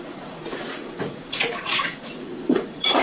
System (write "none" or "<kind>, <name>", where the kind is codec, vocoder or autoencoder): vocoder, Vocos